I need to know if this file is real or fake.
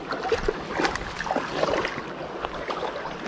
real